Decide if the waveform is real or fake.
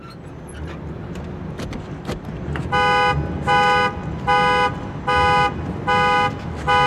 real